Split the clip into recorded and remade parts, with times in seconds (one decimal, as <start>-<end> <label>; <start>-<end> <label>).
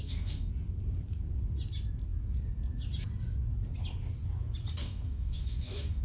0.0-0.5 remade; 0.5-4.8 recorded; 4.8-6.0 remade